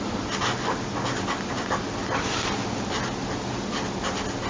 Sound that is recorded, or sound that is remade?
recorded